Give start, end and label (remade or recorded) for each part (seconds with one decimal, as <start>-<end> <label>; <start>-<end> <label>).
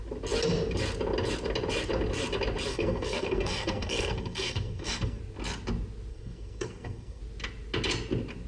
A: 0.0-2.7 recorded; 2.7-5.2 remade; 5.2-6.1 recorded; 6.1-7.2 remade; 7.2-8.5 recorded